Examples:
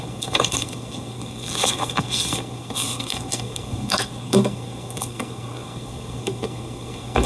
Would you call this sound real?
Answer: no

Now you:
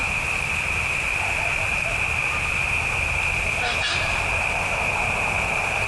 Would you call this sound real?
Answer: yes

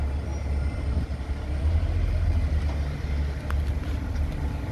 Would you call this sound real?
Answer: yes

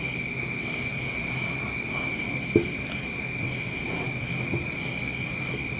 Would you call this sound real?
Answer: yes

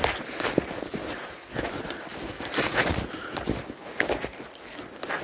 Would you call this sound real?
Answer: yes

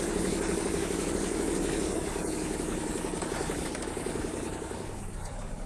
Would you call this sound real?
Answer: no